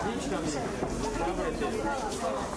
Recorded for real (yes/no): yes